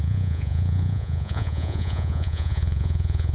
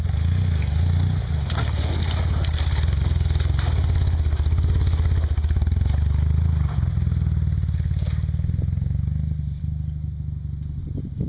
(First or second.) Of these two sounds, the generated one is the first